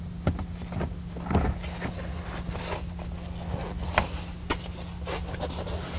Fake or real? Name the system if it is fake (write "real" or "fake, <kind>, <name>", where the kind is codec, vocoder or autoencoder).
real